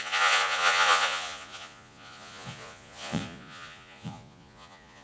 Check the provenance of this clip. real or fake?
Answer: fake